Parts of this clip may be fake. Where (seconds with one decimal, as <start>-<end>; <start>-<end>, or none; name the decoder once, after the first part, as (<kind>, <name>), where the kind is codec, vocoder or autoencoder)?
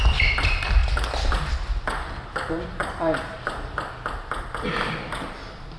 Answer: none